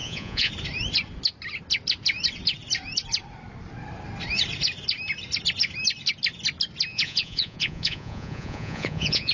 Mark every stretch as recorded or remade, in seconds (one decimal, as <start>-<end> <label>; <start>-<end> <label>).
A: 0.0-0.5 remade; 0.5-6.9 recorded; 6.9-9.3 remade